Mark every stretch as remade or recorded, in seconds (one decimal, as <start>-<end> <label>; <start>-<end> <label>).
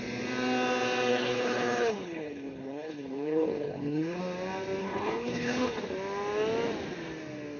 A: 0.0-1.1 recorded; 1.1-4.2 remade; 4.2-4.8 recorded; 4.8-5.8 remade; 5.8-7.6 recorded